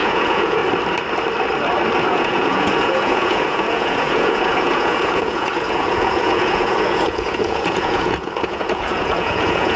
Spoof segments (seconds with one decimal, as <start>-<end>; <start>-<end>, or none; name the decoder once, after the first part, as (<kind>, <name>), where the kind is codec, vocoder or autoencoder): 0.0-0.6 (vocoder, Vocos); 2.1-9.8